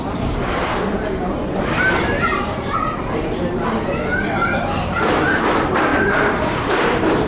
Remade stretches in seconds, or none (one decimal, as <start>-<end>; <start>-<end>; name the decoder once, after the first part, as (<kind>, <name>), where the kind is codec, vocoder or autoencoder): 0.0-7.3 (vocoder, BigVGAN v2)